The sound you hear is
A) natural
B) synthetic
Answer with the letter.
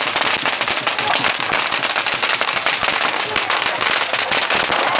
A